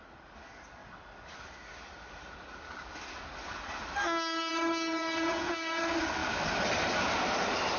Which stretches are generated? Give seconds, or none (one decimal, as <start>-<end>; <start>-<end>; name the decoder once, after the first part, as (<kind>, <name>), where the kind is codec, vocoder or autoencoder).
4.9-5.8 (vocoder, Vocos)